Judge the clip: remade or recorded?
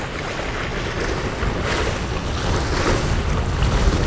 recorded